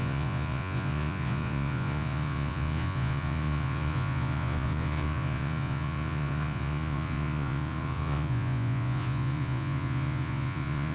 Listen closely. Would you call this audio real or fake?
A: fake